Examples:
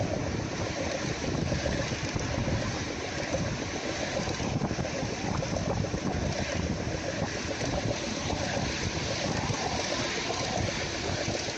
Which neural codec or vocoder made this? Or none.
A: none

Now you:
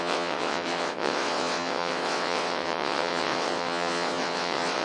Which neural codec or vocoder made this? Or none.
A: vocoder, WaveNeXt